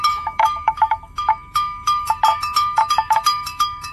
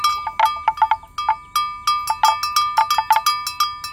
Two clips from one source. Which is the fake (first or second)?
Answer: first